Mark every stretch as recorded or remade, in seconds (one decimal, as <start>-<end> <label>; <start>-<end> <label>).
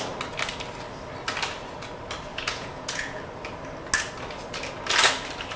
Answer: 0.0-2.3 recorded; 2.3-3.2 remade; 3.2-5.6 recorded